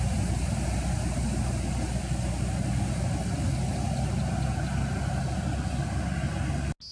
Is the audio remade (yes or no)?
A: no